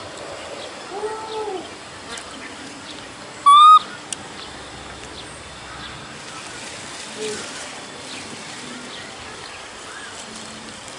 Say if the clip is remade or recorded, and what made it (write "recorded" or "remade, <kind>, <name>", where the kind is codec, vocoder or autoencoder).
recorded